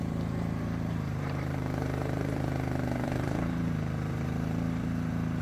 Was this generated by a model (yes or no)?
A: yes